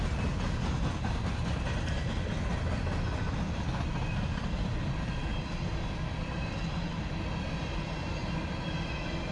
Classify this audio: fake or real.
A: real